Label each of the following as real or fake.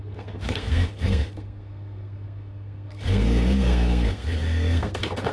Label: fake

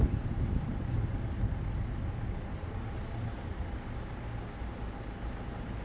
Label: real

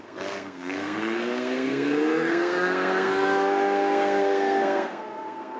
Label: fake